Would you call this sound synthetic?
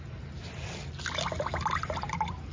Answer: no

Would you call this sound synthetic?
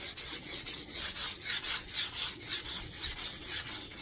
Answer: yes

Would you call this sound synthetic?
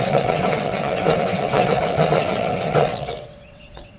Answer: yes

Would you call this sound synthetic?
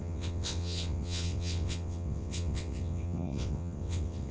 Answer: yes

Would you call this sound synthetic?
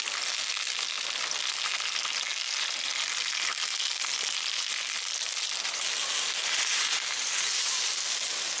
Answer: no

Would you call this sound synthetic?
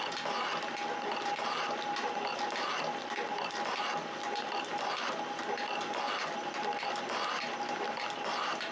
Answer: no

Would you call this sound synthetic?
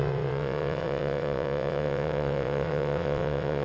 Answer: yes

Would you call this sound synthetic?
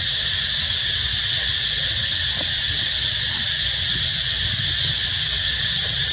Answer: yes